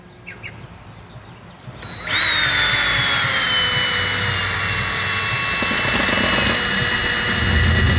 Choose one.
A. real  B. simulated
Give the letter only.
A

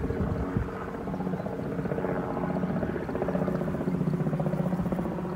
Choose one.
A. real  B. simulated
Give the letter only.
A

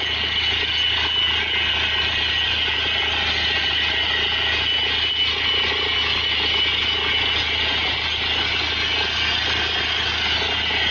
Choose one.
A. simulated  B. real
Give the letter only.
B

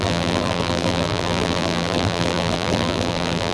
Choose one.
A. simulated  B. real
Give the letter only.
A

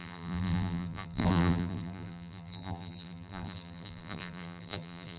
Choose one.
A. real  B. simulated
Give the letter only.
B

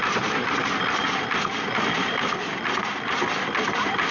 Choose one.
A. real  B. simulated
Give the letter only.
A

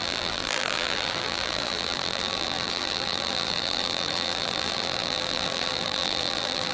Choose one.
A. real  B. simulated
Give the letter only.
B